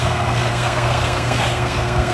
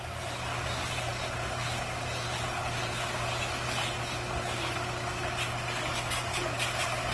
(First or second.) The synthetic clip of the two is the first